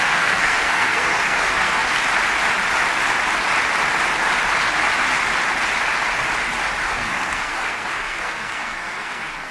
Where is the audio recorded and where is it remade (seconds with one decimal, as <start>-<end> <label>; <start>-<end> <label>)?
0.0-1.8 remade; 1.8-6.9 recorded; 6.9-9.5 remade